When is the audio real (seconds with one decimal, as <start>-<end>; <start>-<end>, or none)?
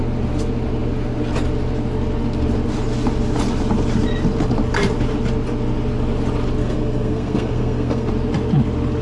0.0-6.6; 8.1-9.0